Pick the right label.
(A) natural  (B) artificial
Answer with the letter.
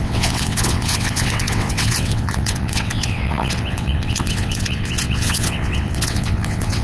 B